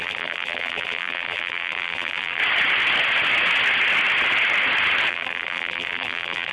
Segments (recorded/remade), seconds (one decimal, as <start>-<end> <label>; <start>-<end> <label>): 0.0-2.4 remade; 2.4-5.1 recorded; 5.1-6.5 remade